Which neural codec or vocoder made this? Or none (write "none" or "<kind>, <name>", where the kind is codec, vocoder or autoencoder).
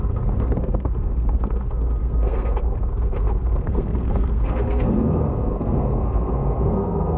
codec, SNAC